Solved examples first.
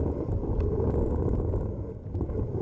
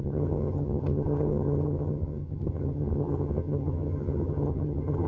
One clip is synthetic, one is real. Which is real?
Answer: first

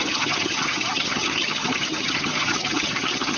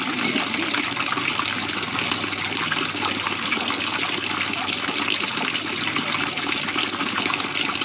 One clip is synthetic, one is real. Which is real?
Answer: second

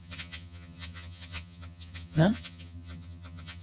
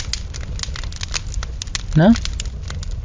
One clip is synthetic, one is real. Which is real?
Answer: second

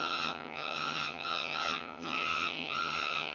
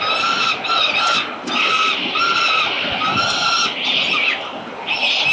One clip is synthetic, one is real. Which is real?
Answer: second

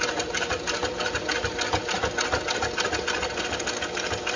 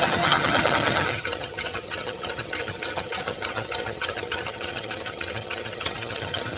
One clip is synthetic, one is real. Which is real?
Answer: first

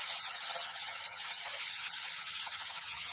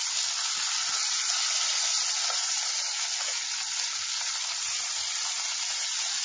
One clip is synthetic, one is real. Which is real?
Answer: second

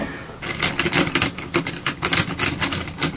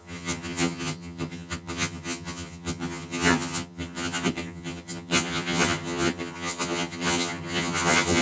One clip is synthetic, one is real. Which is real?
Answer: first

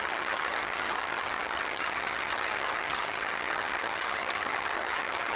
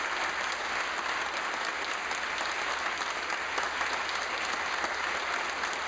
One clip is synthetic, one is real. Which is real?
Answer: second